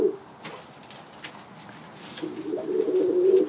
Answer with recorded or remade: recorded